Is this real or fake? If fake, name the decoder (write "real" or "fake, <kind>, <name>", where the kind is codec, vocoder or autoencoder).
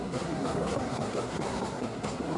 fake, codec, SNAC